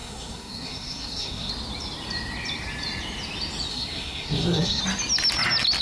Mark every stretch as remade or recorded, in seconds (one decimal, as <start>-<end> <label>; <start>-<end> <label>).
0.0-1.5 remade; 1.5-3.7 recorded; 3.7-4.8 remade; 4.8-5.8 recorded